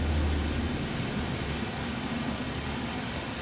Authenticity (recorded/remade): recorded